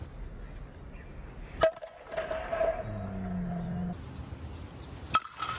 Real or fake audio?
real